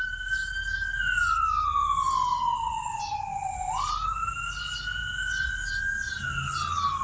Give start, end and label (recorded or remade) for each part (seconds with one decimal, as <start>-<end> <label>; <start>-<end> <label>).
0.0-7.0 recorded